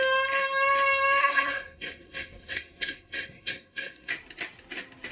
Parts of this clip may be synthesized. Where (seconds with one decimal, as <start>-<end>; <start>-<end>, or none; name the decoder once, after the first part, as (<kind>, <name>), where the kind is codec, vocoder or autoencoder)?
1.2-4.1 (codec, SNAC)